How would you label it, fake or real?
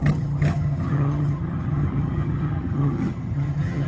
fake